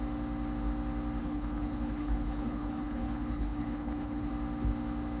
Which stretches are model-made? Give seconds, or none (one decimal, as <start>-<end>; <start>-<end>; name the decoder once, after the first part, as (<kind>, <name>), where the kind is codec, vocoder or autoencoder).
1.2-4.3 (codec, HILCodec)